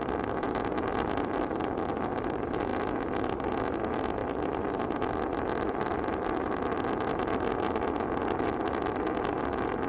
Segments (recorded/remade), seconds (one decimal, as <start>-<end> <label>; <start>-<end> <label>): 0.0-9.9 recorded